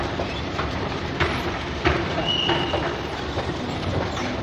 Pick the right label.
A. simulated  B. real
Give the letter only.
A